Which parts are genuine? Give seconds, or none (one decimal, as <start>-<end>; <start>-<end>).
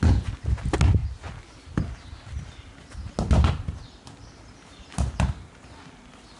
0.0-6.4